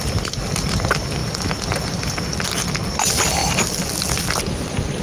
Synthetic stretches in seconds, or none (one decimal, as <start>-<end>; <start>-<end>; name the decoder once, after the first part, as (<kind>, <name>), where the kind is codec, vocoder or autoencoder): none